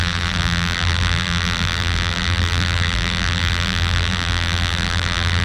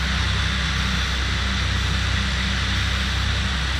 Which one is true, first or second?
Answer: second